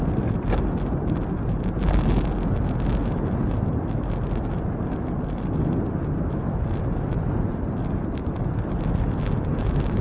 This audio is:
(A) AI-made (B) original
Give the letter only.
B